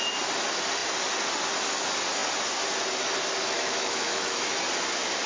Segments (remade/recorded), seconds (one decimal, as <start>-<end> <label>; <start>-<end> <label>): 0.0-3.4 recorded; 3.4-4.5 remade; 4.5-5.3 recorded